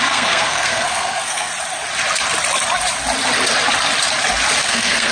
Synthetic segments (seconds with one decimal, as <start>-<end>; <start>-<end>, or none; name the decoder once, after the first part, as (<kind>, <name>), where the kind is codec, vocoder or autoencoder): 0.0-1.5 (codec, SNAC); 4.6-5.1